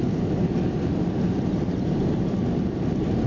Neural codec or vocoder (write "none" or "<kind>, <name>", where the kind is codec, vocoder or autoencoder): none